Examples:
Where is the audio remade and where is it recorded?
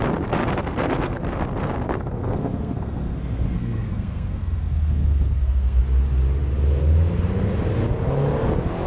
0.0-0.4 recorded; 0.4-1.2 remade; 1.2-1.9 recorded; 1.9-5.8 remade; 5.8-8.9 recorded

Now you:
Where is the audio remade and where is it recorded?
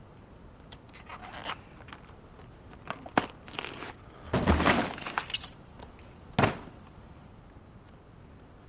0.0-8.7 recorded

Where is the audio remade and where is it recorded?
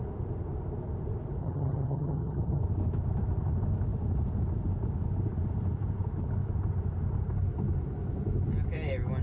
0.0-1.4 recorded; 1.4-2.6 remade; 2.6-9.2 recorded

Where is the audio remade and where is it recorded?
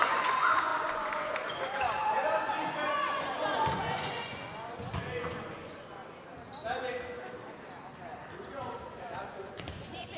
0.0-6.0 remade; 6.0-8.6 recorded; 8.6-10.2 remade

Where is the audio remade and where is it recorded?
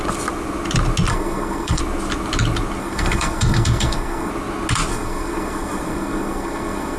0.0-1.1 recorded; 1.1-1.8 remade; 1.8-2.8 recorded; 2.8-4.3 remade; 4.3-4.9 recorded; 4.9-7.0 remade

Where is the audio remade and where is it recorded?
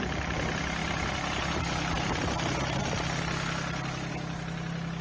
0.0-5.0 recorded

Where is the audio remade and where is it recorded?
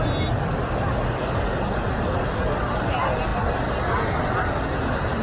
0.0-5.2 recorded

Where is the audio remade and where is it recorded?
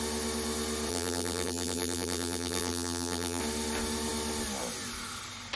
0.0-0.9 recorded; 0.9-3.4 remade; 3.4-5.6 recorded